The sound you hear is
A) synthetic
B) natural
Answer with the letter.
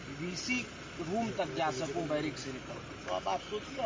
B